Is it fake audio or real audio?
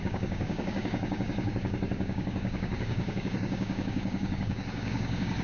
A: fake